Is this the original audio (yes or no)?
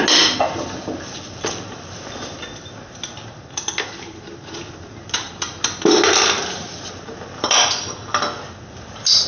yes